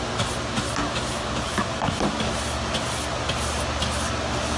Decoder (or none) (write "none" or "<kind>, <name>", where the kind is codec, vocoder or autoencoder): none